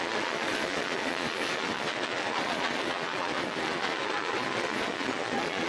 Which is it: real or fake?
fake